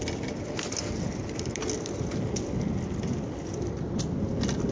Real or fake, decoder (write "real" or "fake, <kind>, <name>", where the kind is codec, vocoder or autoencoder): real